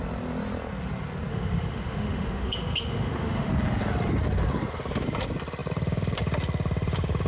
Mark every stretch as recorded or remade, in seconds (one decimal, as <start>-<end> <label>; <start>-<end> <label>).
0.0-1.3 recorded; 1.3-3.5 remade; 3.5-7.3 recorded